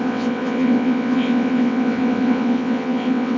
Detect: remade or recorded remade